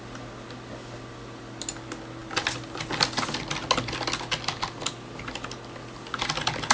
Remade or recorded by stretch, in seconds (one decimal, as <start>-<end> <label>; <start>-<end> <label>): 0.0-6.7 recorded